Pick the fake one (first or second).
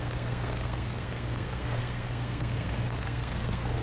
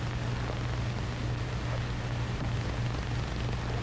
first